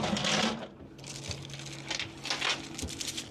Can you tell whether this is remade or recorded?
recorded